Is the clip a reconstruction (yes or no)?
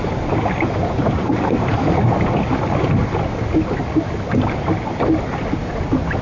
no